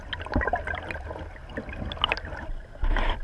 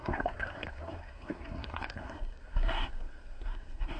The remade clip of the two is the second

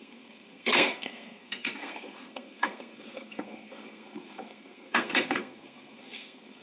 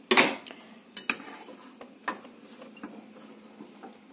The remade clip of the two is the first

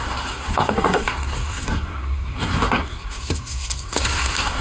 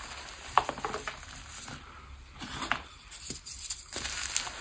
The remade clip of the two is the first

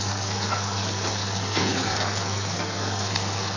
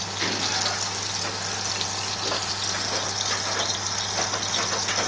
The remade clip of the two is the first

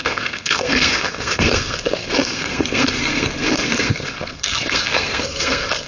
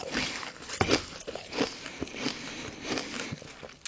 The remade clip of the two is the first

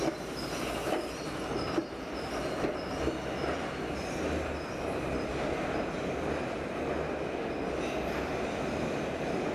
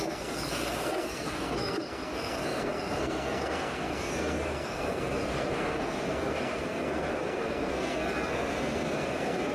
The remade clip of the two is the second